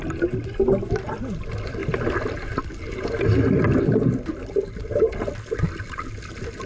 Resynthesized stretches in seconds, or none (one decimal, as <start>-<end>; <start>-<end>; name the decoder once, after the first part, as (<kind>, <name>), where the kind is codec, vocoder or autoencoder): none